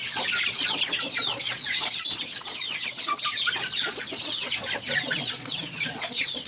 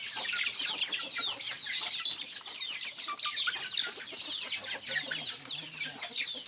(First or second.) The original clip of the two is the second